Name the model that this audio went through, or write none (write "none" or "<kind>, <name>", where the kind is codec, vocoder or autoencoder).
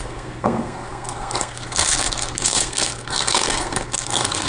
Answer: codec, SNAC